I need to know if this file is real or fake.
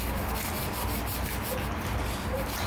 real